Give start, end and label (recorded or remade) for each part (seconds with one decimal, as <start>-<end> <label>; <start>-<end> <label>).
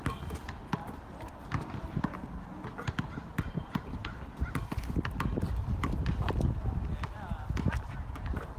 0.0-8.6 recorded